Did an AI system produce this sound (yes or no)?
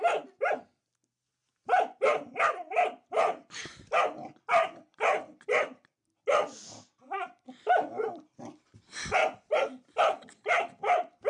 no